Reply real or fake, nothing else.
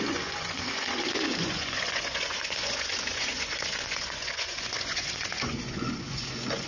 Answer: fake